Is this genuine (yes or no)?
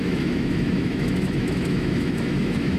no